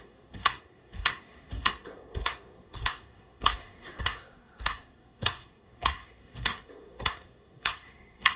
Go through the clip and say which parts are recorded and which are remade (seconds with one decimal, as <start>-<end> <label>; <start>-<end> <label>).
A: 0.0-8.4 remade